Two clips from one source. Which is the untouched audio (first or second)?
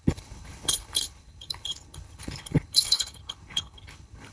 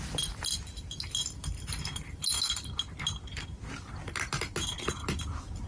second